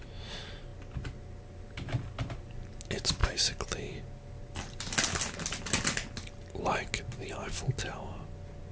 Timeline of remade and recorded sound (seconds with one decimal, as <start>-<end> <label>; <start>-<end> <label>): 0.0-8.7 recorded